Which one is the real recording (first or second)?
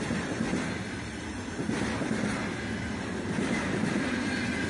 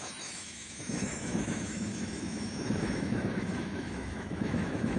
first